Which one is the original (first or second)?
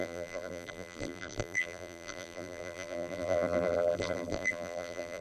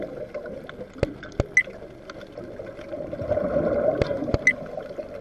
second